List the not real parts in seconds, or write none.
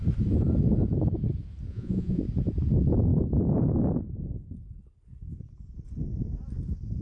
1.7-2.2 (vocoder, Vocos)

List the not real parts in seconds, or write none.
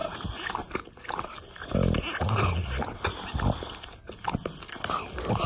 none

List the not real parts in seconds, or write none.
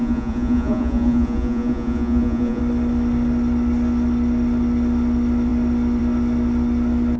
0.0-2.6 (vocoder, Vocos)